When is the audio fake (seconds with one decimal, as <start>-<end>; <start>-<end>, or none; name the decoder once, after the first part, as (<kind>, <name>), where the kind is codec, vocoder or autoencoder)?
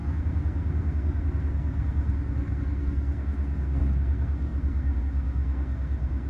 0.0-6.3 (codec, SNAC)